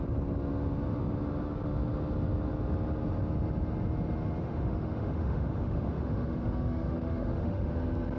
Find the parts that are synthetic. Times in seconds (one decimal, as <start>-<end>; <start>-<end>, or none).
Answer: 4.4-7.7